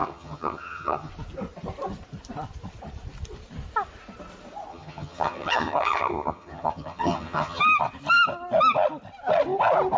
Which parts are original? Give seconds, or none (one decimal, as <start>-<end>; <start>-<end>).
1.1-4.7; 7.6-10.0